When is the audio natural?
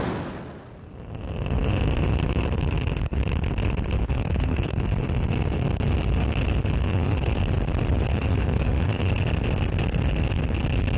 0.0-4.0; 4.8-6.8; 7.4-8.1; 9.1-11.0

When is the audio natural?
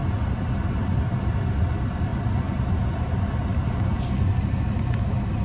0.0-5.4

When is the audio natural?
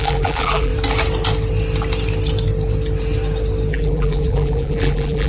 0.7-3.7